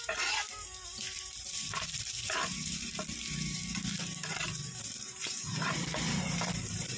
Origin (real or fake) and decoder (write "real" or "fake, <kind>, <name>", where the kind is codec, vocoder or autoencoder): fake, vocoder, BigVGAN v2